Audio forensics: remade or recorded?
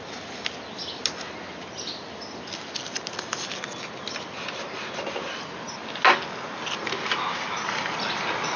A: recorded